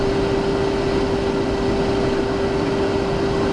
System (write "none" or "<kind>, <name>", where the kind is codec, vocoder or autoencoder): none